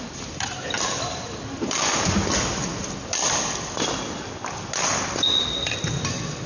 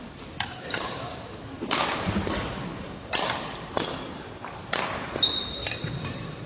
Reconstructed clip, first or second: second